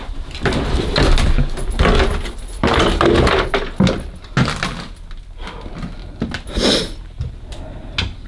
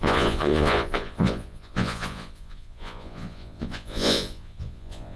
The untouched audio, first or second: first